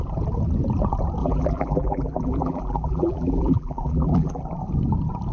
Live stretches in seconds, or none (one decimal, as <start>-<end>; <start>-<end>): 0.0-1.2; 4.4-5.3